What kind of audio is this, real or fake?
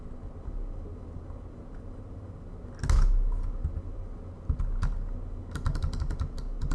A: real